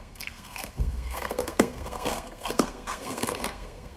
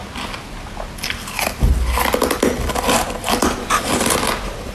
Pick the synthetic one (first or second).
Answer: first